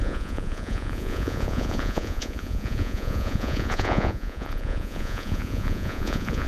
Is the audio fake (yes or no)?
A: yes